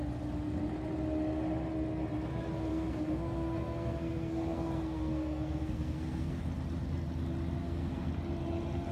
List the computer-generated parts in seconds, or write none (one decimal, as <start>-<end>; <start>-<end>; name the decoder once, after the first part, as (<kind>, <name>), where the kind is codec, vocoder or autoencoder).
2.7-6.4 (codec, SNAC); 7.6-8.1